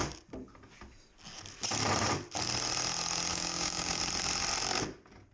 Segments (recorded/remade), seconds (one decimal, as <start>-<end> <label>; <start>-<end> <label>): 0.0-3.3 recorded; 3.3-4.0 remade; 4.0-5.3 recorded